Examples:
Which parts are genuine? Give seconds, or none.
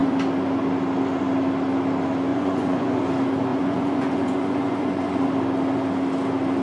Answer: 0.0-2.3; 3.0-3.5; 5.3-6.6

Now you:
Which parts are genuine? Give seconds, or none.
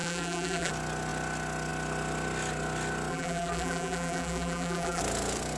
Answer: 0.7-3.1; 5.0-5.6